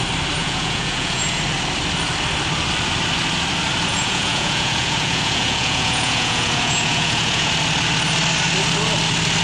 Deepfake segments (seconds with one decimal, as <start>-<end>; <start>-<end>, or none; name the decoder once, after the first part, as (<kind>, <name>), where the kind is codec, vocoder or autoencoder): 0.4-1.4 (vocoder, Vocos); 3.9-7.5